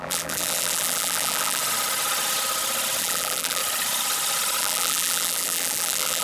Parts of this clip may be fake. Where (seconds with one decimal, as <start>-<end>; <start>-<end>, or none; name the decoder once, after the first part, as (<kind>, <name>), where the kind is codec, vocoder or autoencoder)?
0.0-1.6 (vocoder, BigVGAN v2); 3.0-3.6; 4.6-6.2